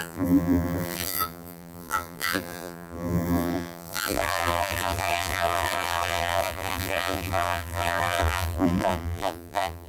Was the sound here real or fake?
fake